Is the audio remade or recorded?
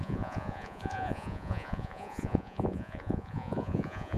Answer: remade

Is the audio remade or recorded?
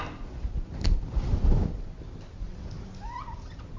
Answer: recorded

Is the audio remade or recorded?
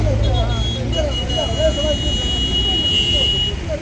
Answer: recorded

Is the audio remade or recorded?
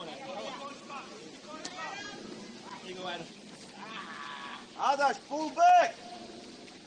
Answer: recorded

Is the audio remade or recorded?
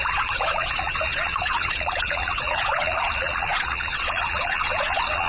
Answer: remade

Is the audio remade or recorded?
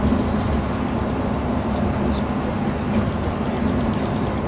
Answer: recorded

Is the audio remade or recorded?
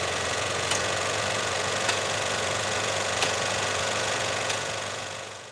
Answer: remade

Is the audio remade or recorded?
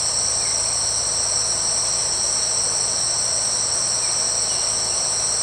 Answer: recorded